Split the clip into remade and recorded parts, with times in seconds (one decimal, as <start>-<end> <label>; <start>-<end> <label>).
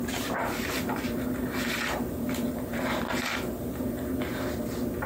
0.0-0.4 recorded; 0.4-1.1 remade; 1.1-5.1 recorded